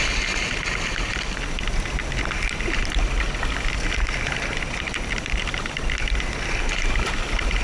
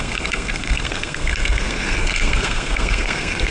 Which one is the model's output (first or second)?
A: second